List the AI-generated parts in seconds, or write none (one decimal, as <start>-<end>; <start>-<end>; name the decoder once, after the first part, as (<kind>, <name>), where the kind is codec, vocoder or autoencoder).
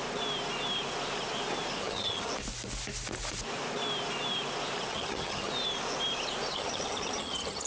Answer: 1.8-2.3 (vocoder, HiFi-GAN); 4.9-5.5; 6.5-7.7